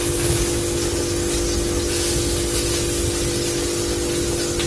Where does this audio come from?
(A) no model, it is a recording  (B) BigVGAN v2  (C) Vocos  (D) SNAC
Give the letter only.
A